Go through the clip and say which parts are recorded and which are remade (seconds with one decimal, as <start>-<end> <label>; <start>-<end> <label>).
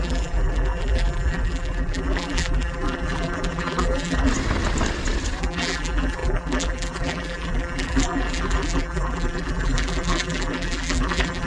0.0-4.3 remade; 4.3-5.4 recorded; 5.4-11.5 remade